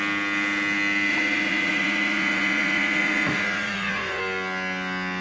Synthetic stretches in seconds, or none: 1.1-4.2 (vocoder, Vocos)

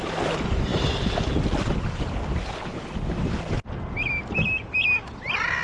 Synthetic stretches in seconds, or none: none

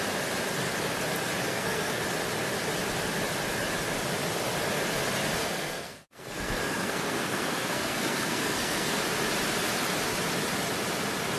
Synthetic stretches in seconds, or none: 1.5-2.0 (codec, SNAC); 5.4-9.0

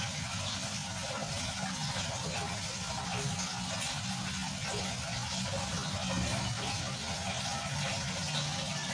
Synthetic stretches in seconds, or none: none

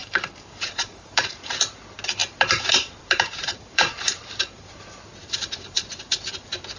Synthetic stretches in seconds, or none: 0.0-1.4 (vocoder, BigVGAN v2); 2.2-4.8; 5.2-5.8

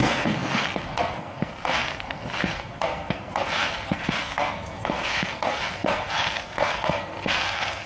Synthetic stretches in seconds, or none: 0.0-7.9 (codec, SNAC)

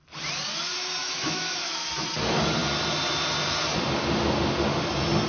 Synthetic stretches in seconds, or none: 1.0-1.9 (autoencoder, DAC-VAE)